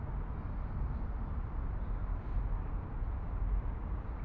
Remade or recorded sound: recorded